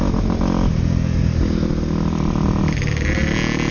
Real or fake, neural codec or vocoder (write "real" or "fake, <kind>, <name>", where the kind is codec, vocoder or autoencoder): real